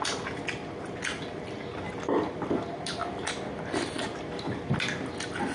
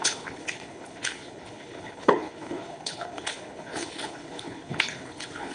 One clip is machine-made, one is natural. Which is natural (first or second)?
first